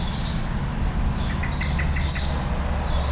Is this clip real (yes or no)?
yes